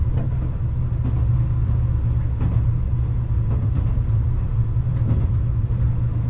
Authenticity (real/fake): real